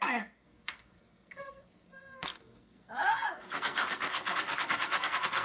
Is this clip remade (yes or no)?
yes